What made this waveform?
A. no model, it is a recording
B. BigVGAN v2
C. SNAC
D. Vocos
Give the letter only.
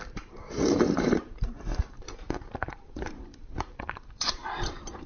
B